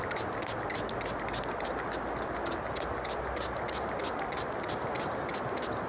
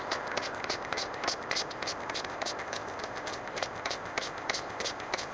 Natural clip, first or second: first